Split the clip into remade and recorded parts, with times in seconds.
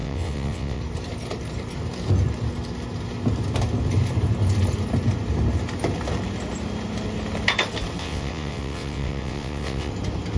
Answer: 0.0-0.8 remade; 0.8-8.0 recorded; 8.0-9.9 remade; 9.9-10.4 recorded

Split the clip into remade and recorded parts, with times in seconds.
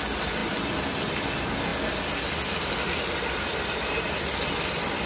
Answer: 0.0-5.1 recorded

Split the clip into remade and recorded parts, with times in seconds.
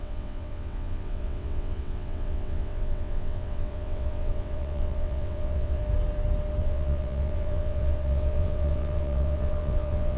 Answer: 0.0-5.8 remade; 5.8-6.6 recorded; 6.6-10.2 remade